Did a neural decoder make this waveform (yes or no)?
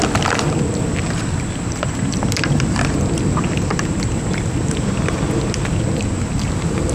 no